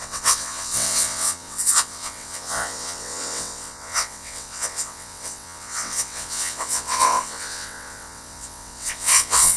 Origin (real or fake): fake